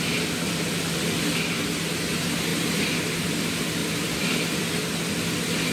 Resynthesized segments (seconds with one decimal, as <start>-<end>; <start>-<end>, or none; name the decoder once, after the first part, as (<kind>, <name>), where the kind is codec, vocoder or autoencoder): 3.8-4.6 (vocoder, BigVGAN v2)